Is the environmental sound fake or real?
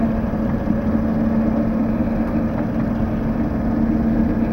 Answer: real